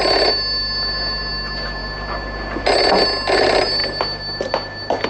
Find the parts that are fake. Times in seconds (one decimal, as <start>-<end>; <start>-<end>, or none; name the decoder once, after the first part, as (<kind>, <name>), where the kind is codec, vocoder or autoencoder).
none